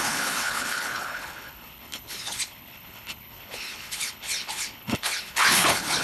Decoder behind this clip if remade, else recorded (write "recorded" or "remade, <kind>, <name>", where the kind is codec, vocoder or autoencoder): remade, codec, HILCodec